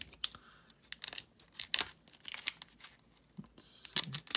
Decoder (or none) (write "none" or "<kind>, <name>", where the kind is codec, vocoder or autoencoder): none